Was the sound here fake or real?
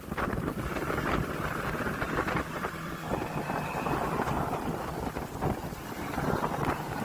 fake